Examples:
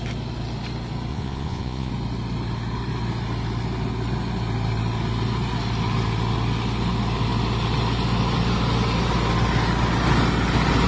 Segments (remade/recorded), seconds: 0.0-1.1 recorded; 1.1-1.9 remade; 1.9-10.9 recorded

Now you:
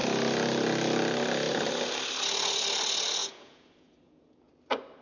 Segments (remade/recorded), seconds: 0.0-3.2 recorded; 3.2-4.5 remade; 4.5-5.0 recorded

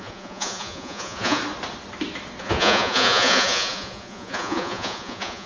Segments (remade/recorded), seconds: 0.0-1.4 remade; 1.4-2.4 recorded; 2.4-5.5 remade

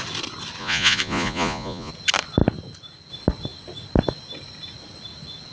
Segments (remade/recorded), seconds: 0.0-0.6 recorded; 0.6-1.9 remade; 1.9-5.5 recorded